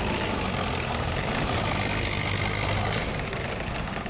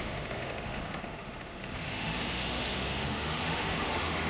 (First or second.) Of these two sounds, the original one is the first